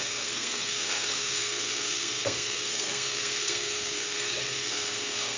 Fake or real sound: fake